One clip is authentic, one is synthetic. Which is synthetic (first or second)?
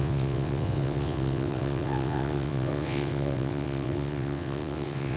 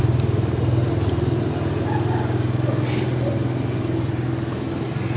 first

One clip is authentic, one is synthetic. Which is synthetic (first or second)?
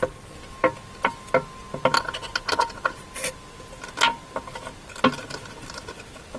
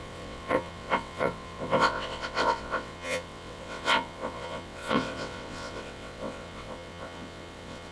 second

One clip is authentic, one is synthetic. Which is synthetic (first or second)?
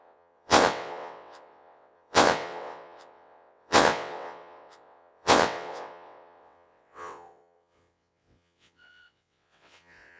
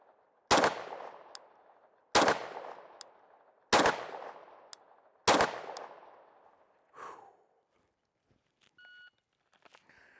first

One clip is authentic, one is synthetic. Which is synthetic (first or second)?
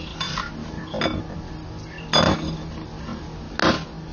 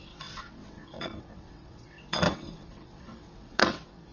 second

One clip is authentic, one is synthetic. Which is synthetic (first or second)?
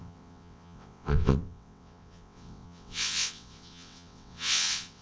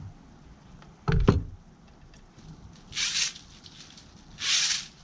first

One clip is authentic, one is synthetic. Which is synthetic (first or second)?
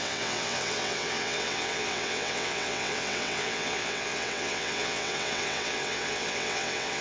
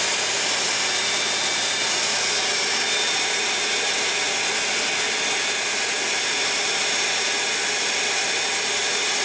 first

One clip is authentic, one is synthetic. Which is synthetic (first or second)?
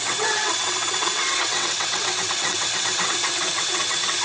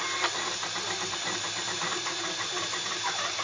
first